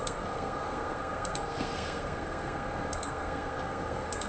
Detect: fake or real fake